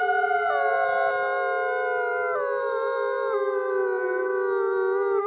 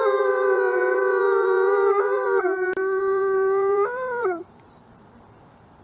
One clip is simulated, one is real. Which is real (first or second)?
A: first